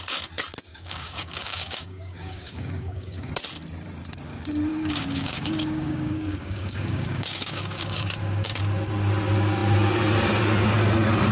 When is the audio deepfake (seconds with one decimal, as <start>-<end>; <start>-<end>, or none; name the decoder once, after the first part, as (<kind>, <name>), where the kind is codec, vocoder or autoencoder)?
0.7-3.3 (codec, DAC); 4.7-8.6